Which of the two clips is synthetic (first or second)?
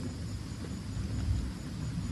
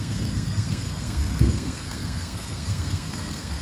second